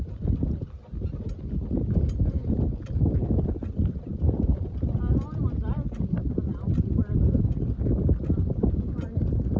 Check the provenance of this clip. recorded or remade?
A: recorded